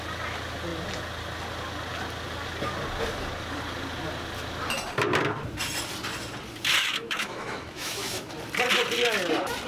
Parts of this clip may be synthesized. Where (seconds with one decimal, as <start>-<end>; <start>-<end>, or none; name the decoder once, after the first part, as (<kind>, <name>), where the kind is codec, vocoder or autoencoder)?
6.8-8.3 (autoencoder, DAC-VAE)